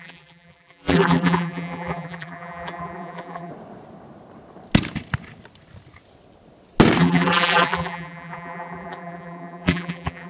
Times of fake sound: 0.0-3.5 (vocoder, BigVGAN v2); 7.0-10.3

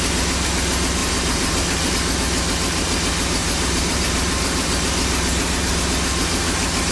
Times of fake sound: 1.0-1.9 (vocoder, BigVGAN v2); 3.4-5.8